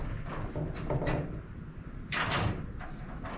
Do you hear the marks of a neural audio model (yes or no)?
no